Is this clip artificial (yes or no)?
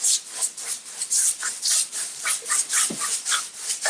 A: yes